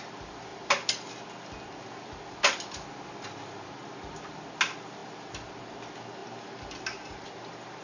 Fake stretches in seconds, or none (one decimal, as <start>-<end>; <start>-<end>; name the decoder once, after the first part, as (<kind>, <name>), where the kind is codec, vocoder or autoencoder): none